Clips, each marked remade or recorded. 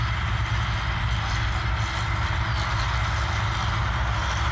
recorded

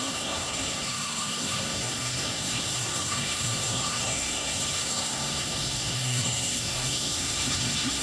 remade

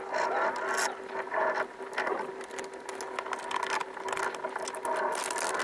recorded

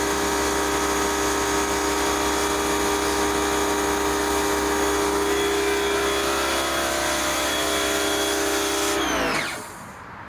recorded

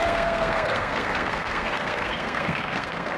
remade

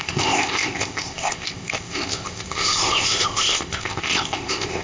remade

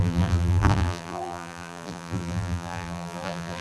remade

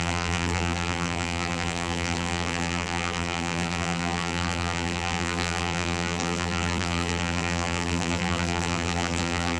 remade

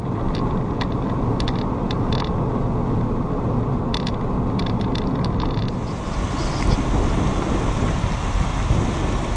recorded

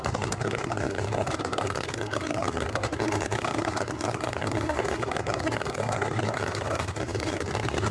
remade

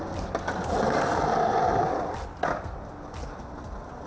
recorded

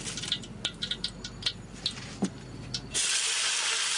recorded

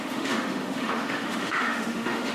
remade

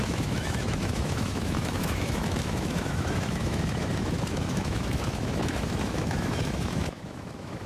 remade